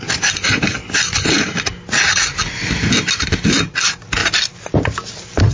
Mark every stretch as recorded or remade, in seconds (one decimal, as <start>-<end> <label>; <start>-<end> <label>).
0.0-5.5 recorded